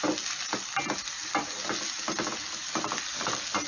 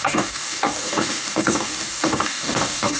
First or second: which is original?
first